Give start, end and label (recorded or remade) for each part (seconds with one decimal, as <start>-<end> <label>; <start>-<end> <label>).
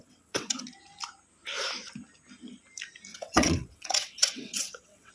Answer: 0.0-0.6 remade; 0.6-3.1 recorded; 3.1-5.1 remade